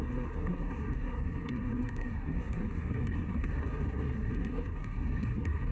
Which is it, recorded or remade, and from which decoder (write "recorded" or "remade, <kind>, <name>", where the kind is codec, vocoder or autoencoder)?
remade, codec, SNAC